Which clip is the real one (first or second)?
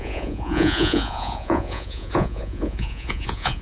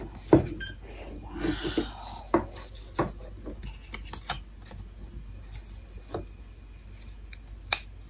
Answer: second